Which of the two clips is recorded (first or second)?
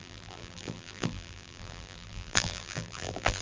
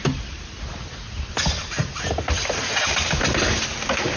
second